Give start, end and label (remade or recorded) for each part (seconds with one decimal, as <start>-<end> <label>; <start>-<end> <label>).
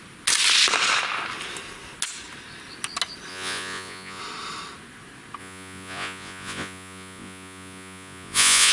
0.0-3.3 recorded; 3.3-4.2 remade; 4.2-5.4 recorded; 5.4-8.7 remade